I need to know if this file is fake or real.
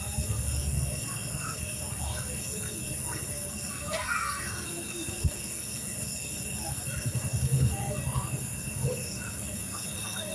fake